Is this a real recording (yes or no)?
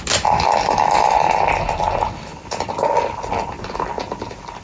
yes